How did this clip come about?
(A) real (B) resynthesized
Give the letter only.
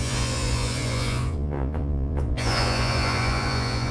B